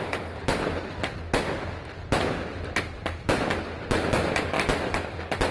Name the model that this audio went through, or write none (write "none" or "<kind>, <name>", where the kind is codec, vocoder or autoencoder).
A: none